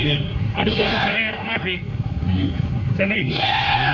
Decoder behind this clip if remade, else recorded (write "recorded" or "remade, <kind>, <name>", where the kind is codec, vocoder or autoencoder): remade, codec, SNAC